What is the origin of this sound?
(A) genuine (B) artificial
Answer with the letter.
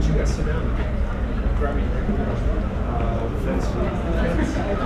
A